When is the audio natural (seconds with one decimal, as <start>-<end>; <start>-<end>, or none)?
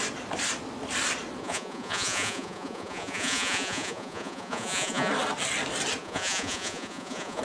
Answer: 0.0-1.4; 5.1-6.0